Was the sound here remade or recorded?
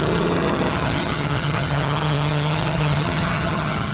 remade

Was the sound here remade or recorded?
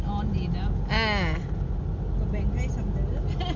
recorded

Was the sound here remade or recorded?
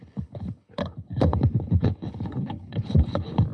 remade